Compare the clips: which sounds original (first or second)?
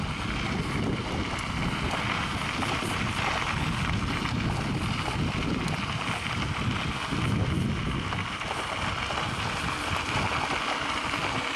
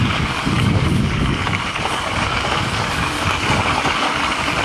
first